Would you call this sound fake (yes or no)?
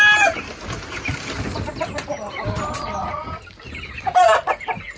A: no